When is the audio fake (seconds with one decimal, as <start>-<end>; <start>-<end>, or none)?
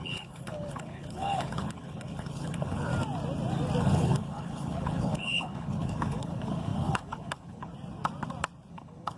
0.0-2.9; 3.8-7.7; 8.7-9.2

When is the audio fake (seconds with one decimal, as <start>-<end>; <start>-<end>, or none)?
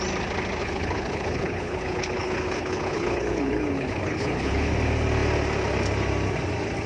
0.6-4.7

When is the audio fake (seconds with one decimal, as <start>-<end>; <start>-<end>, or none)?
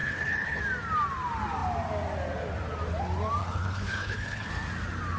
0.0-0.6; 3.4-4.5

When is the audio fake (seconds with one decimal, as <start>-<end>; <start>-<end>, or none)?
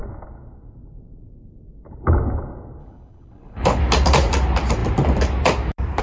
2.8-3.8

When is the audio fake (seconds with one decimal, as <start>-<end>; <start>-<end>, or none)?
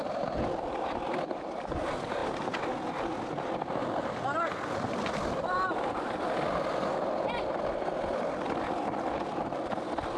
none